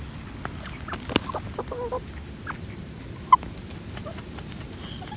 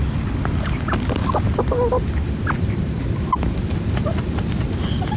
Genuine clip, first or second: first